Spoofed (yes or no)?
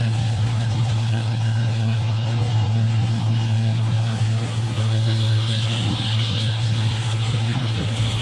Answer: yes